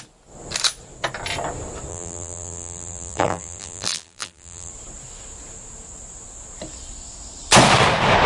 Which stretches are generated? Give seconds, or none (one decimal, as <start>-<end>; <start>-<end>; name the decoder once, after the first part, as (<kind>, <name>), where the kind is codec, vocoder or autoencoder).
1.9-4.7 (vocoder, BigVGAN v2)